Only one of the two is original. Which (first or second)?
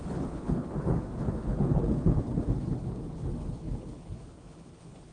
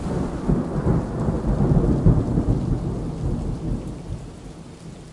second